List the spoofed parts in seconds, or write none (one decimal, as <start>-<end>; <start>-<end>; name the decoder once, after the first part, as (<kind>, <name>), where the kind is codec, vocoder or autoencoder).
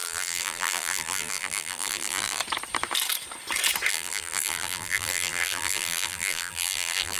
0.0-2.4 (vocoder, BigVGAN v2); 3.9-7.2